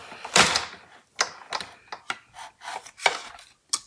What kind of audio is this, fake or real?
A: real